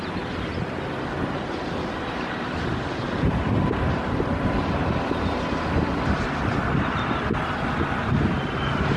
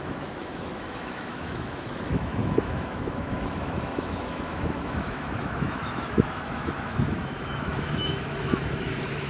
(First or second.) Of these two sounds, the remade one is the second